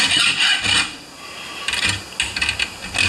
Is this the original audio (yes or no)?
yes